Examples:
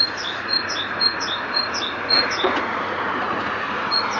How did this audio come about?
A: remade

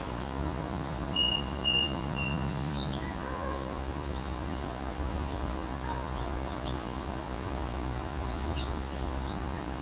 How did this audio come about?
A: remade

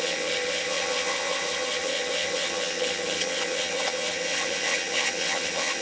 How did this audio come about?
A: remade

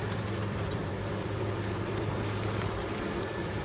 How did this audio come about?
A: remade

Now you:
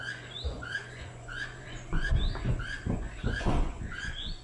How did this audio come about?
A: remade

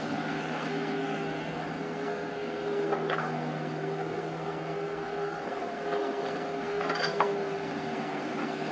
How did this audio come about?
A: remade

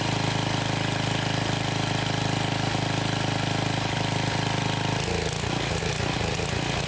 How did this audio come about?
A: recorded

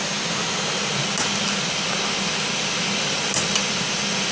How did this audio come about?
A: recorded